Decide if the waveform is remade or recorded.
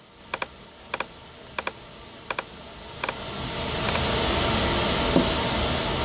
recorded